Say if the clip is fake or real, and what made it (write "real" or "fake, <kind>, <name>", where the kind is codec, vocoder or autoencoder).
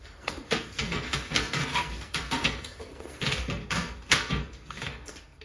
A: fake, codec, SNAC